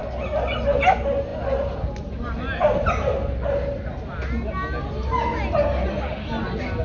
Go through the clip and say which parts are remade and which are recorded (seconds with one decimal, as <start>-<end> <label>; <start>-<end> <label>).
0.0-6.8 recorded